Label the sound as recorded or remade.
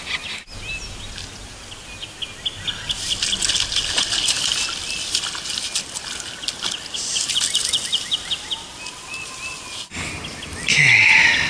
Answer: recorded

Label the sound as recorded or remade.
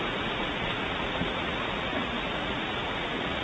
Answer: remade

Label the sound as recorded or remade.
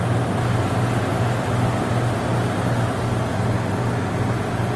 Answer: recorded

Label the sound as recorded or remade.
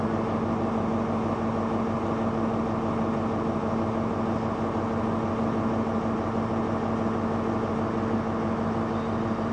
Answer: recorded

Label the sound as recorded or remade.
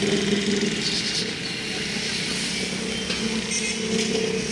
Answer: recorded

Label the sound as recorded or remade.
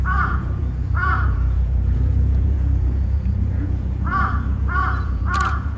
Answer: remade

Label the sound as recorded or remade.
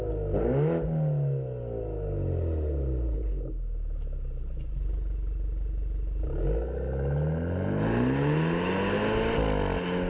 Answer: recorded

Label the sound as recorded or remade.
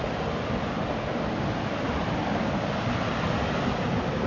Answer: recorded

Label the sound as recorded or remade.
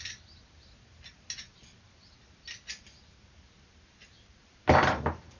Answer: recorded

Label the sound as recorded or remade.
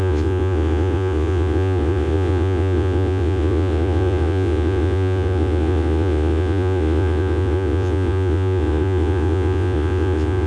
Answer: remade